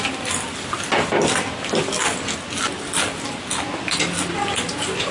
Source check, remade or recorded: recorded